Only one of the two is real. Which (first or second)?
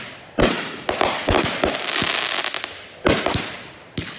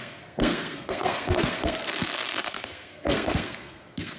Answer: first